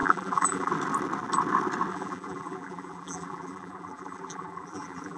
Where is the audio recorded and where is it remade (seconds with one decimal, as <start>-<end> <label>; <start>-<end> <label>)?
0.0-0.7 remade; 0.7-1.9 recorded; 1.9-5.2 remade